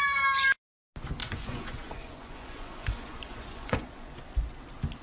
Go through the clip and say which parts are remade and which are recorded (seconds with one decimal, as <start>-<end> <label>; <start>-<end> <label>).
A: 0.0-1.2 recorded; 1.2-4.2 remade; 4.2-5.0 recorded